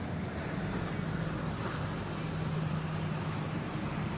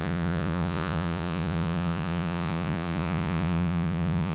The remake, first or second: second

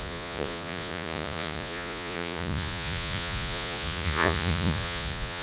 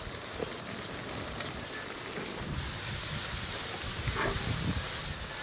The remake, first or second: first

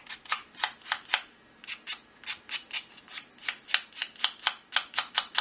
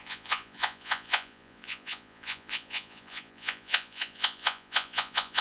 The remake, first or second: second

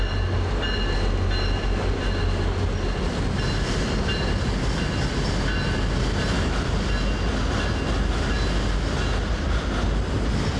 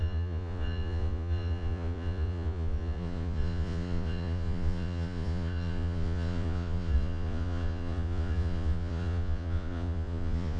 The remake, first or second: second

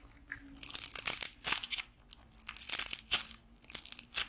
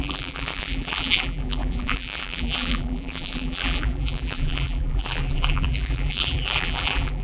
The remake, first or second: second